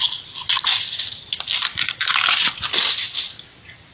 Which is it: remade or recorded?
recorded